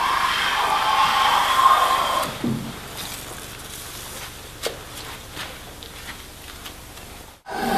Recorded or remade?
recorded